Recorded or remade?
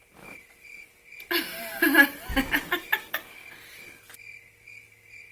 recorded